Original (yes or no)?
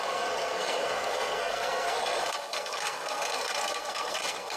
no